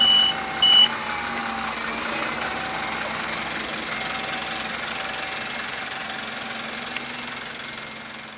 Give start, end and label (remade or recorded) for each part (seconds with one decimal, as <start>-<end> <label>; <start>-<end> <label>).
0.0-8.4 recorded